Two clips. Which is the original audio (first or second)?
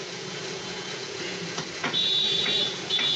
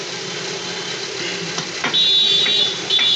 second